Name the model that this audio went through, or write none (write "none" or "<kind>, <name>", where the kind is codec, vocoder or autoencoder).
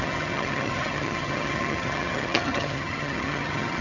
vocoder, HiFi-GAN